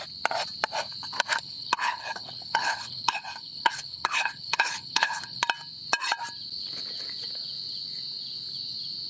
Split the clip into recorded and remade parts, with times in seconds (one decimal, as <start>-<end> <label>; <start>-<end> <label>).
0.0-1.4 recorded; 1.4-5.4 remade; 5.4-9.1 recorded